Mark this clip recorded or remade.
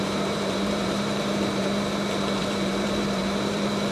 remade